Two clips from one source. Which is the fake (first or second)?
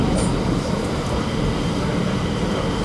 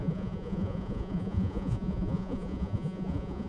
second